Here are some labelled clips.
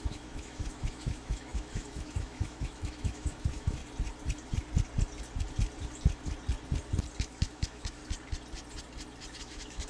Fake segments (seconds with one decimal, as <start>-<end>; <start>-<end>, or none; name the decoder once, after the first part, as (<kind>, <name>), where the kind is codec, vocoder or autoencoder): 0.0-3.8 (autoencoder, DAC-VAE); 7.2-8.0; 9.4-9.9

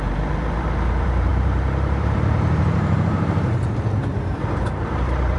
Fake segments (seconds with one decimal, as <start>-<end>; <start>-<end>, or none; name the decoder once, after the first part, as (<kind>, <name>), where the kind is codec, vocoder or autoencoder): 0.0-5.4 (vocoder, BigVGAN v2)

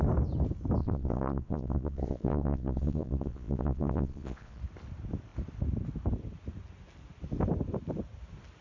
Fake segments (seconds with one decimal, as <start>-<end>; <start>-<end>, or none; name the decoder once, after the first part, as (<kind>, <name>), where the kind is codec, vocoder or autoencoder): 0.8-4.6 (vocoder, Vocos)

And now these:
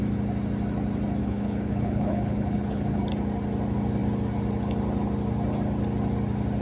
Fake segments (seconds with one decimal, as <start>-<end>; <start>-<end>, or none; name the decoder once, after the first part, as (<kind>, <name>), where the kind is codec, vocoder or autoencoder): 1.2-3.0 (codec, HILCodec)